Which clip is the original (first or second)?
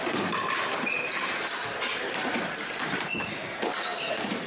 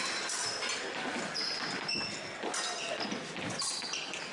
second